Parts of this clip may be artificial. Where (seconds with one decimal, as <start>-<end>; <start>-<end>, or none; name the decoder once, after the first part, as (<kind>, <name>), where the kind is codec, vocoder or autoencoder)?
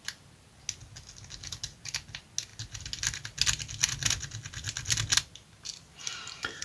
none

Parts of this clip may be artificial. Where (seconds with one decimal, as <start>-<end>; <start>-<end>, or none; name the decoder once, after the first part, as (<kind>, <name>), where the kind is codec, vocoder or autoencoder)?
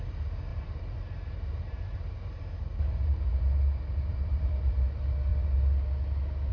0.5-2.4 (vocoder, BigVGAN v2); 4.1-4.7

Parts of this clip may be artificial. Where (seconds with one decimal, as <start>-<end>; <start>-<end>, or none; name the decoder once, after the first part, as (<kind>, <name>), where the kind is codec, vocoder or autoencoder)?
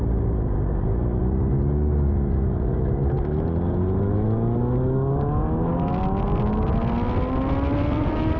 none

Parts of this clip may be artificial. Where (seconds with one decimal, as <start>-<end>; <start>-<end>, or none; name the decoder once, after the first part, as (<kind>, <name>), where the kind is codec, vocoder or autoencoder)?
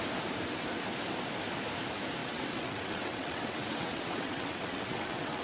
2.2-5.4 (vocoder, WaveNeXt)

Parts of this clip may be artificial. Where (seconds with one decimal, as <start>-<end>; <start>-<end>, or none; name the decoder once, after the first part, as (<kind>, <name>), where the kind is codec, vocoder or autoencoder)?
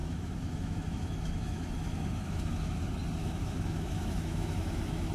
0.0-2.8 (autoencoder, DAC-VAE); 3.2-5.1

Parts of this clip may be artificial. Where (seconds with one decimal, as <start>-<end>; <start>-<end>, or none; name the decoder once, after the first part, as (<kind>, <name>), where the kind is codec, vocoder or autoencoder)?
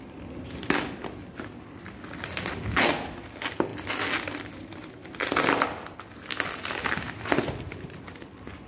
0.0-2.4 (vocoder, BigVGAN v2)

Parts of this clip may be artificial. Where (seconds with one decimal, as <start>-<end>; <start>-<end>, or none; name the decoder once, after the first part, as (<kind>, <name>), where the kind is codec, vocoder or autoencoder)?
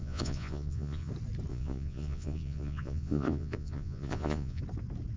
0.0-1.1 (vocoder, Vocos); 1.5-4.6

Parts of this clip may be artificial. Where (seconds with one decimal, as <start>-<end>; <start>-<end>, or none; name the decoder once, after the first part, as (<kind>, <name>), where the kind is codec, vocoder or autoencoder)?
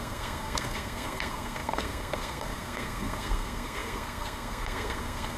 0.0-5.4 (codec, SNAC)